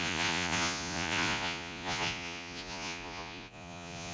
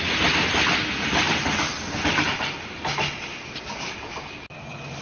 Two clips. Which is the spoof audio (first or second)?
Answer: first